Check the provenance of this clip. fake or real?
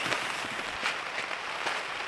real